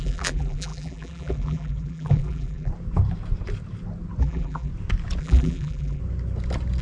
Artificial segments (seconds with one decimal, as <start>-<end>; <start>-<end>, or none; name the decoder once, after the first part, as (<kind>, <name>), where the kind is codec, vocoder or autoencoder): 0.0-2.7 (vocoder, BigVGAN v2); 4.2-4.7; 5.2-6.0